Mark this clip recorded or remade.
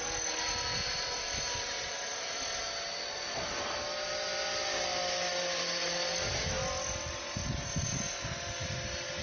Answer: recorded